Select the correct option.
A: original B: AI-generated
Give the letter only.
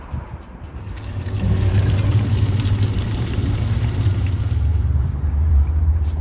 B